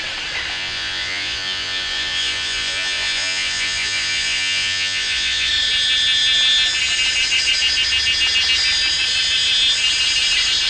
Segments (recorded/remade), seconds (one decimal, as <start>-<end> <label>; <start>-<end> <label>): 0.0-0.5 recorded; 0.5-5.5 remade; 5.5-10.7 recorded